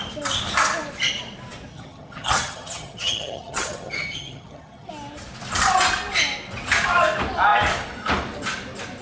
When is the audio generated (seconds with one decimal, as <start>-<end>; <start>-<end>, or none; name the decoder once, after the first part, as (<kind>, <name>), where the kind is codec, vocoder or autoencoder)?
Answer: 1.7-4.9 (vocoder, HiFi-GAN)